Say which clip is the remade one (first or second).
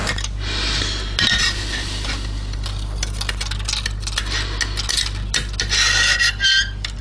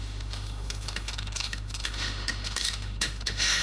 second